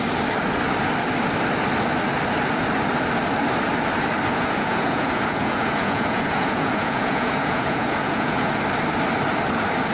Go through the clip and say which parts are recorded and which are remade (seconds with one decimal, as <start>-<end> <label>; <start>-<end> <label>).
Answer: 0.0-4.3 recorded; 4.3-8.6 remade; 8.6-9.9 recorded